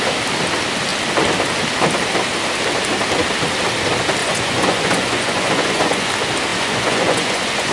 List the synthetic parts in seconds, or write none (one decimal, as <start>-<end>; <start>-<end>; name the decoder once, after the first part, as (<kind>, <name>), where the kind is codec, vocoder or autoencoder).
4.2-6.1 (vocoder, Vocos); 6.5-7.7